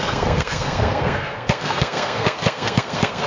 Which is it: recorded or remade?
remade